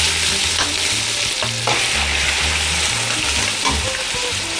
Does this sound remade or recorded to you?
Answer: recorded